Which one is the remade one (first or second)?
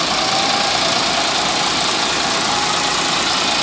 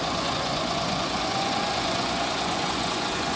second